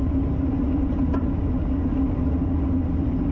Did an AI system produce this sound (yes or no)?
no